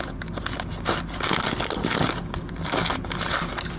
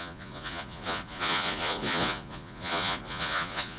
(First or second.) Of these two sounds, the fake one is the second